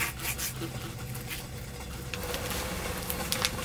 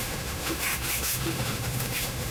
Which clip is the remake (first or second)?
second